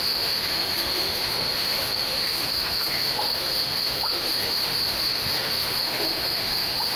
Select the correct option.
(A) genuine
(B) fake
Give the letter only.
B